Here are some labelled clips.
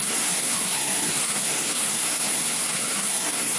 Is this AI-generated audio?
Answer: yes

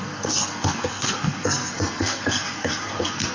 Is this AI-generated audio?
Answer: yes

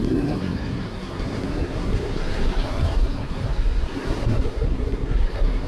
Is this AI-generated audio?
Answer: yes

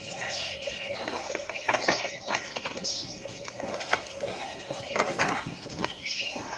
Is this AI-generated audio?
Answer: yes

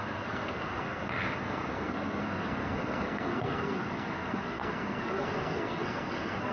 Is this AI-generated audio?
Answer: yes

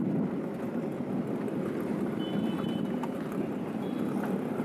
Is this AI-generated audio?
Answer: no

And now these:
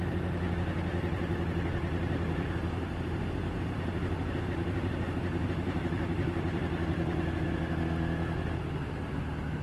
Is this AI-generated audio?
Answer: no